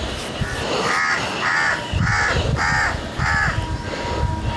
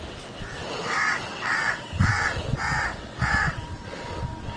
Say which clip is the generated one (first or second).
second